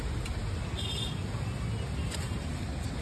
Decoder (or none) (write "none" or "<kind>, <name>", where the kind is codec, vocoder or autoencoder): none